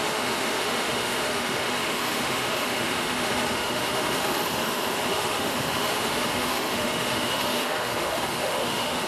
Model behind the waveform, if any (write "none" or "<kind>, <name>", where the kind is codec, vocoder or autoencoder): autoencoder, DAC-VAE